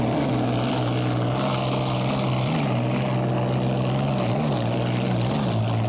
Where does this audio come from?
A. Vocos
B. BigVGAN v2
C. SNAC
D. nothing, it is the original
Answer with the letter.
D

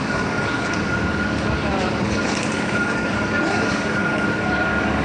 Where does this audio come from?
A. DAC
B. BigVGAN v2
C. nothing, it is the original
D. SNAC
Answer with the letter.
A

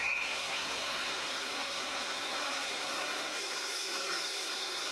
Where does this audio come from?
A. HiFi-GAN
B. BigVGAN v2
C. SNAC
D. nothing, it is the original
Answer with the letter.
C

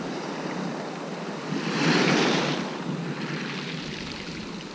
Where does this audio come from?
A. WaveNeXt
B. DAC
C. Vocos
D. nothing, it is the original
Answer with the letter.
D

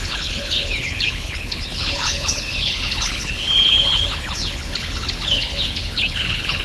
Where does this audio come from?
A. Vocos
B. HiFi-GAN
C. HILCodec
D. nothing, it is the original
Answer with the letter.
C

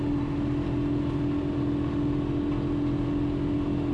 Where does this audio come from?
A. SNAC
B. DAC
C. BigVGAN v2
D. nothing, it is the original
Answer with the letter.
D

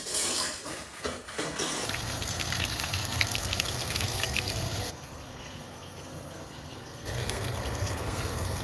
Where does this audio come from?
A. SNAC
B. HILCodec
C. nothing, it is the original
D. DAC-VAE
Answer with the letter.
A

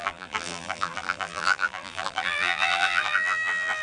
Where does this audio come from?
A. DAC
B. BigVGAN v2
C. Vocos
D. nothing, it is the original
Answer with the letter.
B